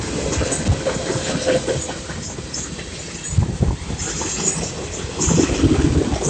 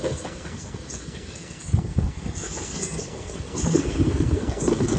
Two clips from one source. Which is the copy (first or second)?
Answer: second